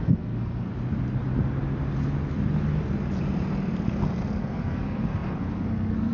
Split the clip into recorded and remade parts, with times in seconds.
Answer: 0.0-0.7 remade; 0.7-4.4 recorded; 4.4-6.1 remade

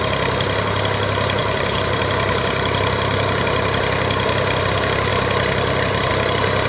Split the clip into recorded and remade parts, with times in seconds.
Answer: 0.0-1.4 recorded; 1.4-2.0 remade; 2.0-6.7 recorded

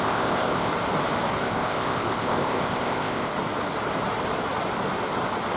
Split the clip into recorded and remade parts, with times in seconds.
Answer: 0.0-0.7 remade; 0.7-1.4 recorded; 1.4-3.3 remade; 3.3-5.6 recorded

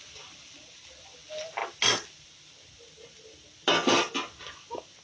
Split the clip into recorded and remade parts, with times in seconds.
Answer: 0.0-5.0 recorded

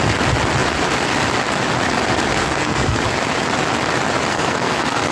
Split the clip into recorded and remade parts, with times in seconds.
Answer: 0.0-2.4 recorded; 2.4-3.0 remade; 3.0-4.3 recorded; 4.3-5.1 remade

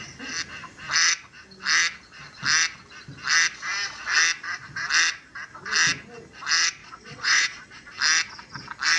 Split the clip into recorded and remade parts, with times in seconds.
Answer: 0.0-6.8 recorded; 6.8-7.9 remade; 7.9-9.0 recorded